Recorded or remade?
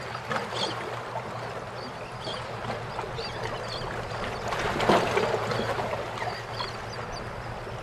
recorded